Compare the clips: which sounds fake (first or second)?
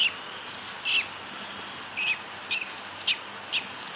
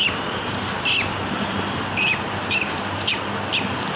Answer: second